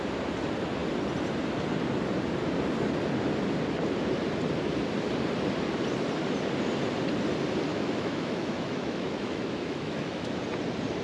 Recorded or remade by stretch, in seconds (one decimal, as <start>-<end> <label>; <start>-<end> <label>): 0.0-7.7 recorded; 7.7-10.4 remade; 10.4-11.0 recorded